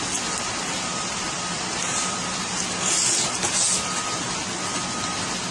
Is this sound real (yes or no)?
yes